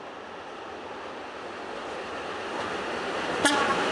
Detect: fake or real real